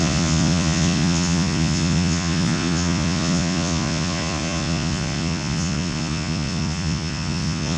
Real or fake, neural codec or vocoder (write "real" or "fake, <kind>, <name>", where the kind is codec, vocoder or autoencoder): fake, vocoder, Vocos